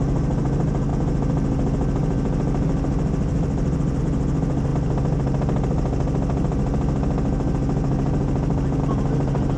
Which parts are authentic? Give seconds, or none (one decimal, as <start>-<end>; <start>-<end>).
0.0-9.6